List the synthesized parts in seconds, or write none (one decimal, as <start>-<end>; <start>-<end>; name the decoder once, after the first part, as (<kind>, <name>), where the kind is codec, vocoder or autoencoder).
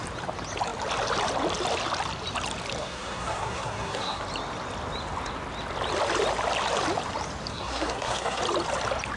2.8-4.2 (codec, SNAC); 7.5-8.4